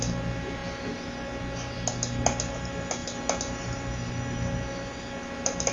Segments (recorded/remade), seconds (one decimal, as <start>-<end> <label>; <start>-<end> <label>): 0.0-5.7 recorded